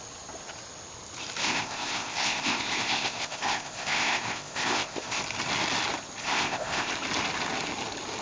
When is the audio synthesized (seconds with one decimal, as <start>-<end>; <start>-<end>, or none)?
1.4-5.2; 6.2-6.9